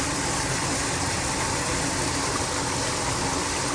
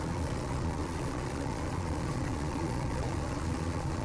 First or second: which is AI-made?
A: second